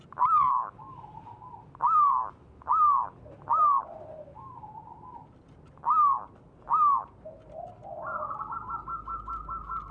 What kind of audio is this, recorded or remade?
recorded